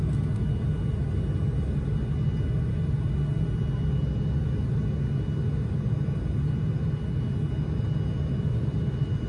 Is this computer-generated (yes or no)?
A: no